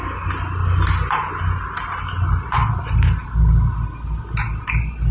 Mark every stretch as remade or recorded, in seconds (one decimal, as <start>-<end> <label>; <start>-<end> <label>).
0.0-5.1 recorded